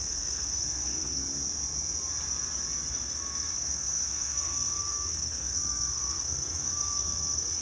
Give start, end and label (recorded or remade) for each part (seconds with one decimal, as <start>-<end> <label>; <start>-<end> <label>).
0.0-1.2 remade; 1.2-2.9 recorded; 2.9-7.6 remade